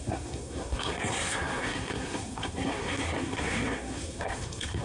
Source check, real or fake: fake